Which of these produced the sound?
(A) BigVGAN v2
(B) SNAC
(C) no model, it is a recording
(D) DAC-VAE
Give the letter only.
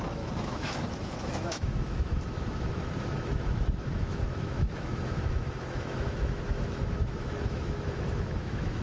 D